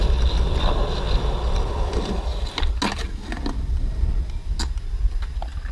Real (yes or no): yes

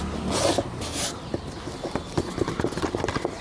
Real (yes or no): yes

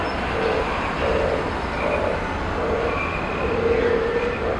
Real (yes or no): yes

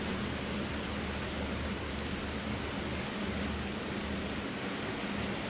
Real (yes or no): yes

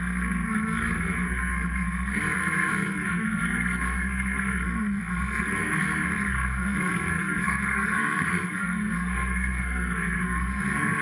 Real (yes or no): no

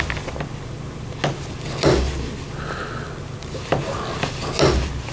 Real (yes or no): yes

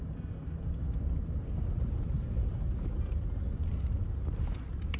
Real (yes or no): yes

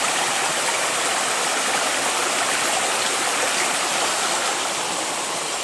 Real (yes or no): yes